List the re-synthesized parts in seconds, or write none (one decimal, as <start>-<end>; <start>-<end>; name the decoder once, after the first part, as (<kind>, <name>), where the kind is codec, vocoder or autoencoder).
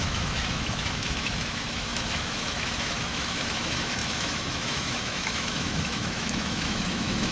0.0-7.3 (autoencoder, DAC-VAE)